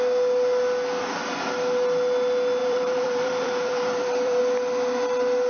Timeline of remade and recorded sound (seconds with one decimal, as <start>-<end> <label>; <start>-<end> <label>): 0.0-2.6 recorded; 2.6-4.4 remade; 4.4-5.5 recorded